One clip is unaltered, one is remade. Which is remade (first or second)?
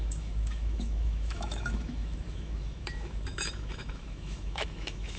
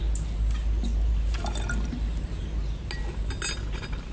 first